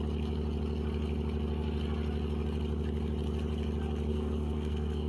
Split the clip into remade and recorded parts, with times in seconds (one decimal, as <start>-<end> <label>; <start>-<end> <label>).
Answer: 0.0-4.1 recorded; 4.1-5.1 remade